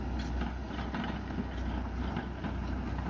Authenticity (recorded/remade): recorded